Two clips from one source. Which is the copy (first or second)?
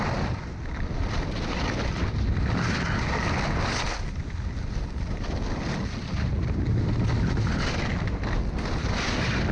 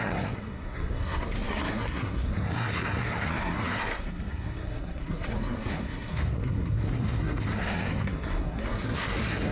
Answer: second